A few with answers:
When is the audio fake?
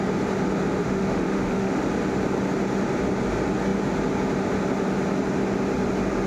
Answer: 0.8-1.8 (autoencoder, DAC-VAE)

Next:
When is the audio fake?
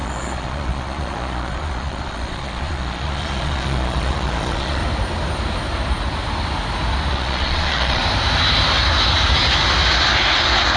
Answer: 0.0-4.8 (vocoder, Vocos); 7.1-8.0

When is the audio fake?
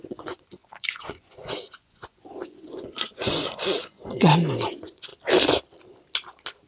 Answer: 0.0-5.1 (vocoder, Vocos)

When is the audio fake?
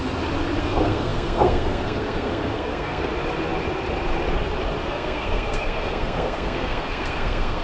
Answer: 0.6-3.1 (codec, SNAC); 4.9-7.6